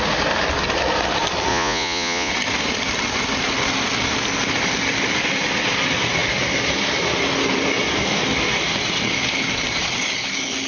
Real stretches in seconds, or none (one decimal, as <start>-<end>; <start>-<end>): 0.0-1.5; 2.3-10.7